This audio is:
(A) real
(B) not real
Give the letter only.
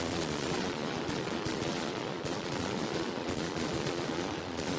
B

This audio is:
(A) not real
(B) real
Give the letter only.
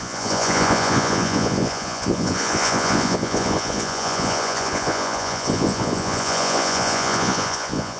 A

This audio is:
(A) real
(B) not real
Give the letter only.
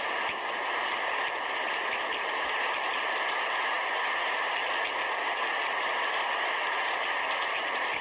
A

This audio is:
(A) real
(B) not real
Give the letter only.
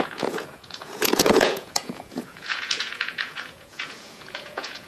B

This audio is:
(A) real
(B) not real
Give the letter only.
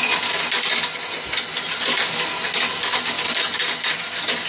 A